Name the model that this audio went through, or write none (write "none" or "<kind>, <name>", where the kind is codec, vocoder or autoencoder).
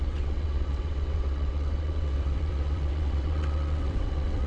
vocoder, WaveNeXt